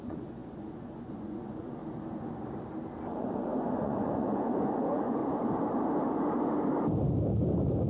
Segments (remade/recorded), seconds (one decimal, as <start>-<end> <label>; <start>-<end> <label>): 0.0-1.8 remade; 1.8-3.1 recorded; 3.1-5.2 remade; 5.2-7.9 recorded